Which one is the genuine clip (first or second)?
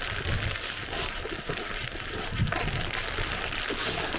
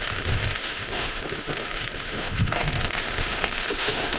first